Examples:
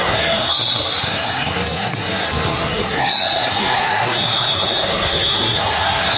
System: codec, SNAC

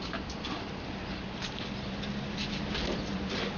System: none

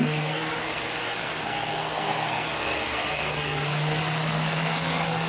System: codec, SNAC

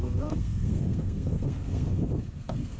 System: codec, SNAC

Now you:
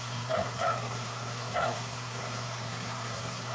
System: codec, SNAC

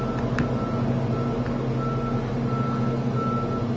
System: none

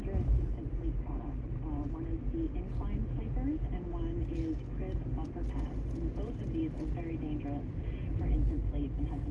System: none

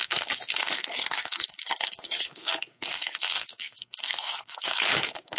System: codec, SNAC